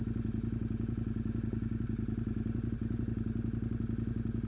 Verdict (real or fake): real